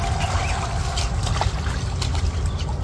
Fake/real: real